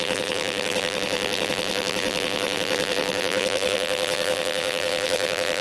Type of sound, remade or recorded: remade